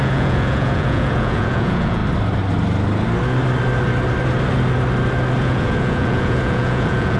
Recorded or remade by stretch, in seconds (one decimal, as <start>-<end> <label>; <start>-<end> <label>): 0.0-2.0 remade; 2.0-5.4 recorded; 5.4-7.2 remade